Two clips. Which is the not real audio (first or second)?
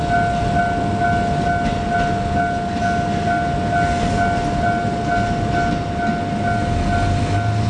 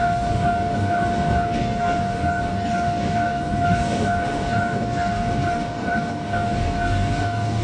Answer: second